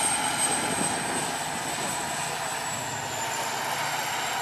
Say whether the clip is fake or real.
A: real